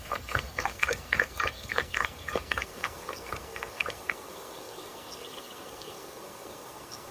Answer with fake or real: fake